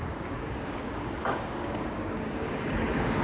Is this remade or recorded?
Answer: remade